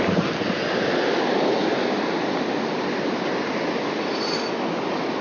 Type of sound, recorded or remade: recorded